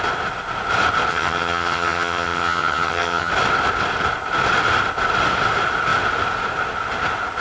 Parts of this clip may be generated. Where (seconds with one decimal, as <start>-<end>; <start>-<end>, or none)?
1.1-3.3